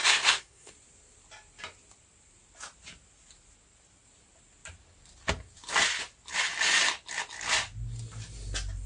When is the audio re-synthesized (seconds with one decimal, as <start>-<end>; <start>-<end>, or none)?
0.0-0.7